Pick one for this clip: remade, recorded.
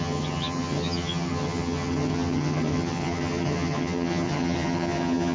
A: remade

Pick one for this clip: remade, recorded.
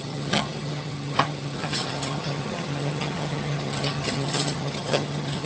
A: remade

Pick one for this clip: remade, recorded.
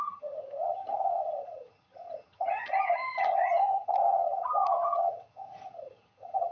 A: remade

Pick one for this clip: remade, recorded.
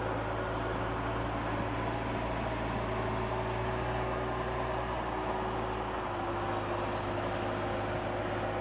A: recorded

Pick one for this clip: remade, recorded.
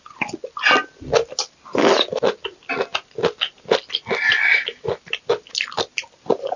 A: recorded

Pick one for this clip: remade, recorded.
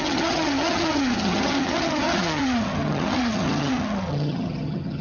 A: remade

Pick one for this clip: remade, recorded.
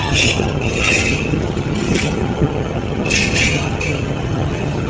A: remade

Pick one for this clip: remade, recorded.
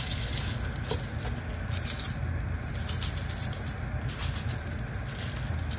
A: recorded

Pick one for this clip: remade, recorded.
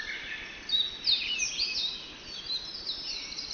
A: recorded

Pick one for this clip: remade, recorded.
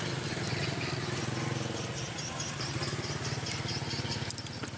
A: recorded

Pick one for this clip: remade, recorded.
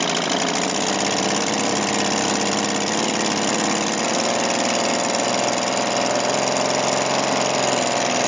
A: recorded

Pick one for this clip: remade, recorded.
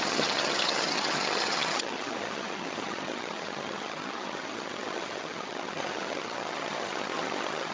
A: remade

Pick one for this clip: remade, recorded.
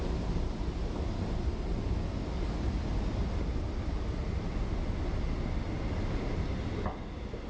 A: recorded